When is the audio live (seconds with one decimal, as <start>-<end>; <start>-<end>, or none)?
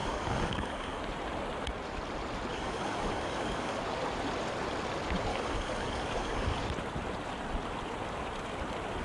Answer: 1.0-2.5; 3.8-5.3; 6.6-9.0